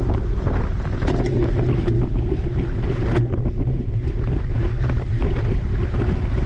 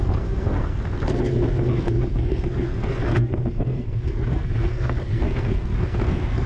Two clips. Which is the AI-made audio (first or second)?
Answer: second